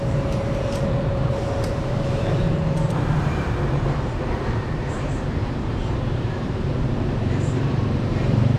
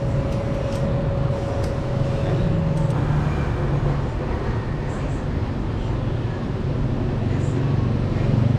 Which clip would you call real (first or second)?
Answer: second